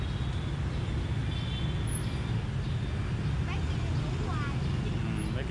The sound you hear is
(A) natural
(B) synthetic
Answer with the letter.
A